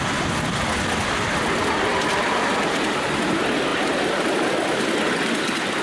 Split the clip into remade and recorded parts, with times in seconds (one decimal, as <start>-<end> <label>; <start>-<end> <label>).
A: 0.0-3.7 recorded; 3.7-5.8 remade